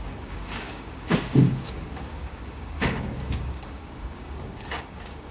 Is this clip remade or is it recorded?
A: remade